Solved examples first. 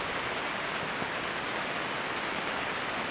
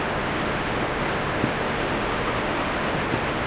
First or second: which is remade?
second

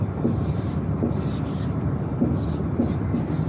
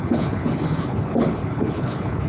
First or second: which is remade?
second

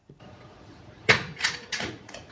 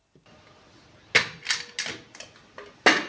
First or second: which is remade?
first